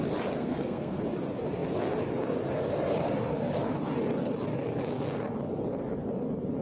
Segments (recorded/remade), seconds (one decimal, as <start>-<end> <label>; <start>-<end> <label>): 0.0-0.4 recorded; 0.4-1.0 remade; 1.0-6.6 recorded